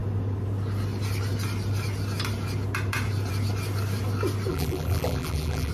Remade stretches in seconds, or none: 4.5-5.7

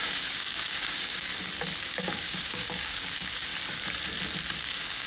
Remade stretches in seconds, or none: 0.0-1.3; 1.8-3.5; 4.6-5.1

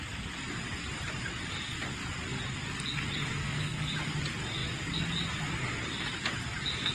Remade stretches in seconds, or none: 3.4-3.9